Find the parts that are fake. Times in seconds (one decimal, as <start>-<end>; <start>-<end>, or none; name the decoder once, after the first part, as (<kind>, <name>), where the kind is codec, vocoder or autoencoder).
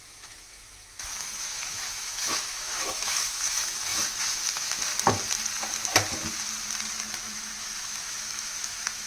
0.0-4.9 (autoencoder, DAC-VAE); 7.6-9.1